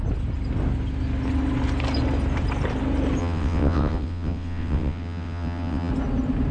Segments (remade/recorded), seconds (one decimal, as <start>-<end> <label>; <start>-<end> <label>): 0.0-3.2 recorded; 3.2-5.9 remade; 5.9-6.5 recorded